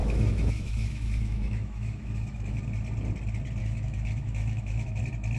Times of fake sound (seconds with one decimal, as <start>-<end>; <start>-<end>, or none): 0.0-2.6; 3.6-5.0